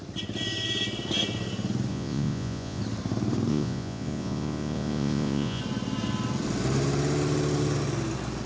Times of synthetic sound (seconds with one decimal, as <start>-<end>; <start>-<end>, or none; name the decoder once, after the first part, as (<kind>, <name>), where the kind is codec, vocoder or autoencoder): 1.9-2.8 (vocoder, Vocos); 3.5-5.6

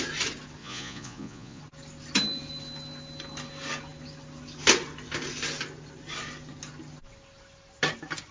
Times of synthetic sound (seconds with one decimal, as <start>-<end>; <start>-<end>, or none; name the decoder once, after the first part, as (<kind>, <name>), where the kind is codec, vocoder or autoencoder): 0.6-1.6 (vocoder, Vocos)

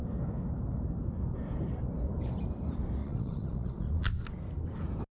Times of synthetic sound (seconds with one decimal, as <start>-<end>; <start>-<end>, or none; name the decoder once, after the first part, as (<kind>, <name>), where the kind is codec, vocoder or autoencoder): 3.0-4.0 (vocoder, Vocos)

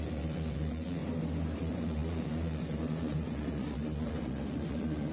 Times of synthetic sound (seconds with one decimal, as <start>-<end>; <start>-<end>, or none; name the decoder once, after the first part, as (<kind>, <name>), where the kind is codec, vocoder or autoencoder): 0.0-1.0 (vocoder, Vocos); 1.6-5.1

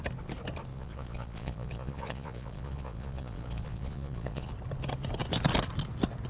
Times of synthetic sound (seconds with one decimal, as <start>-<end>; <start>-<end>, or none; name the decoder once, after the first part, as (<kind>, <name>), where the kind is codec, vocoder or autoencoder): 0.7-4.5 (vocoder, Vocos)

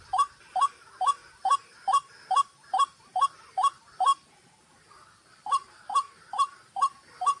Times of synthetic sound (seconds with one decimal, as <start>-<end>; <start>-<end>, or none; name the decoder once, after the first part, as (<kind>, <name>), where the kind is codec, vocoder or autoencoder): none

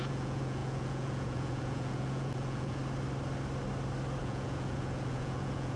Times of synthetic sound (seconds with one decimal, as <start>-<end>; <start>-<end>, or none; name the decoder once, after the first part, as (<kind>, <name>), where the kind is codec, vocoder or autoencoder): 0.0-2.8 (vocoder, Vocos); 4.2-5.8